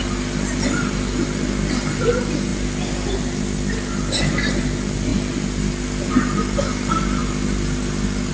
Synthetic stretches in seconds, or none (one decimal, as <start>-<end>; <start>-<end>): none